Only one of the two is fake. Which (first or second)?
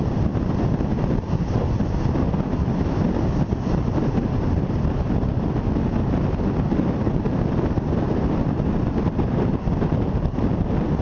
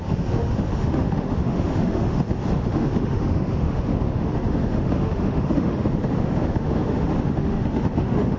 second